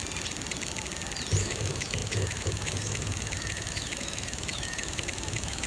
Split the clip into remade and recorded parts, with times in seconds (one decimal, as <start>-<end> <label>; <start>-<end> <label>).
0.0-1.4 recorded; 1.4-5.7 remade